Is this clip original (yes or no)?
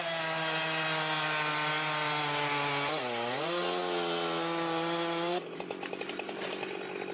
yes